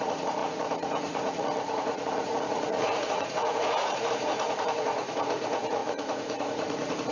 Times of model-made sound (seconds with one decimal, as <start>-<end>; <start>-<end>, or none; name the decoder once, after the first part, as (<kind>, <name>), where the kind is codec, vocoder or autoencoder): 0.0-7.1 (vocoder, Vocos)